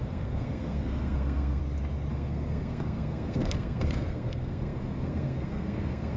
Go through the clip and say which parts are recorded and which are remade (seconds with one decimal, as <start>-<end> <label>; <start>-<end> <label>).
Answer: 0.0-1.6 remade; 1.6-2.1 recorded; 2.1-6.2 remade